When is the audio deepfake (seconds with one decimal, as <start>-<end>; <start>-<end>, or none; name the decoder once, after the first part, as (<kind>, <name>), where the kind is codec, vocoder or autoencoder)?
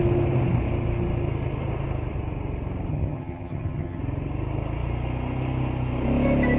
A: 2.9-4.0 (vocoder, HiFi-GAN)